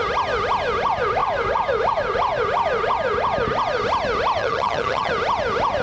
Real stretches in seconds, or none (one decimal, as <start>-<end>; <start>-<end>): 0.0-4.4; 5.1-5.8